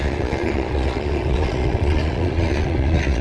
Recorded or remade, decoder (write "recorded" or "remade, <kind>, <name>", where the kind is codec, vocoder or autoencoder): remade, vocoder, Vocos